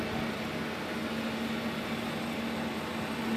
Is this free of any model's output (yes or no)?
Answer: yes